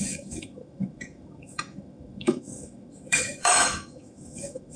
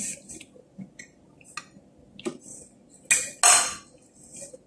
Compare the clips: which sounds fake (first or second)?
first